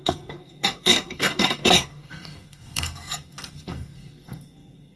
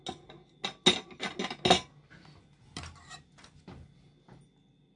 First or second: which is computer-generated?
first